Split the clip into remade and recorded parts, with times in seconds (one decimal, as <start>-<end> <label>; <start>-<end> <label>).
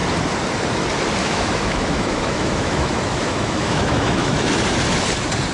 0.0-1.2 recorded; 1.2-4.5 remade; 4.5-5.5 recorded